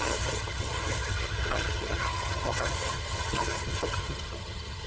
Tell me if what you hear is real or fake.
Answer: fake